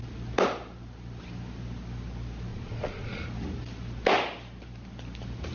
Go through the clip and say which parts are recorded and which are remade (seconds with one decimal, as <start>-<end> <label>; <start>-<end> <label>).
0.0-2.5 recorded; 2.5-3.2 remade; 3.2-5.5 recorded